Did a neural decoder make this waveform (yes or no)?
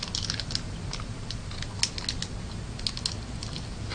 no